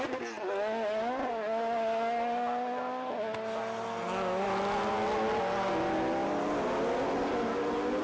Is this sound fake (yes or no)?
no